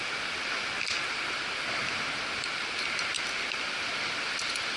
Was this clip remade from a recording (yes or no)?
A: no